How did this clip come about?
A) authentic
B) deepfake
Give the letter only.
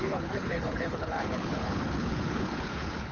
B